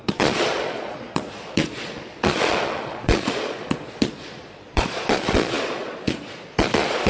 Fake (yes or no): yes